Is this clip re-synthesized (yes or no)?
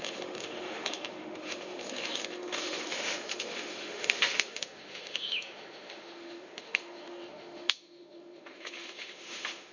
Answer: yes